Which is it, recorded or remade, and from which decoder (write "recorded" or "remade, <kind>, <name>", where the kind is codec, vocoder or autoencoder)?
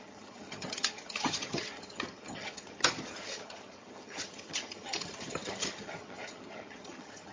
remade, vocoder, HiFi-GAN